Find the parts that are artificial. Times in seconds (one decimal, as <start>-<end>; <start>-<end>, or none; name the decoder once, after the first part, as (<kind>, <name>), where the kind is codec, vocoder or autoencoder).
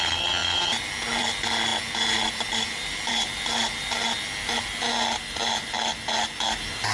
none